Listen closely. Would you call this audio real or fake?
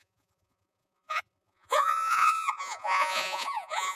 fake